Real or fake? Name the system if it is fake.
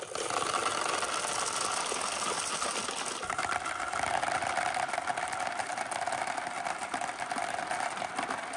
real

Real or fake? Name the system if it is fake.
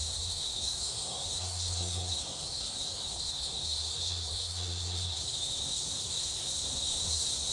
fake, codec, SNAC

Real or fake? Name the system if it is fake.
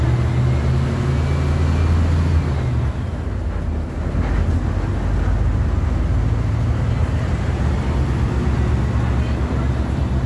real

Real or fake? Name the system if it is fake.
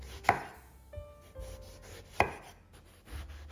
real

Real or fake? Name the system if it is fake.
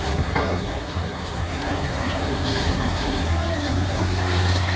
fake, codec, SNAC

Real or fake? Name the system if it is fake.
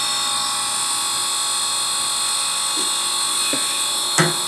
real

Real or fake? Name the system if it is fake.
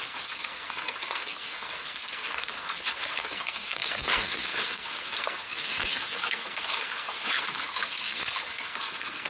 fake, codec, SNAC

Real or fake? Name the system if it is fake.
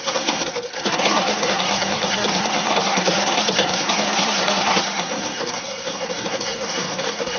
fake, codec, SNAC